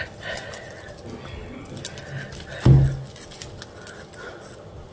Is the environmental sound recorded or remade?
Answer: recorded